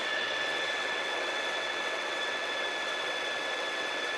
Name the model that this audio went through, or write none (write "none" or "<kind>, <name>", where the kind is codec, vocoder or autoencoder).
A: vocoder, WaveNeXt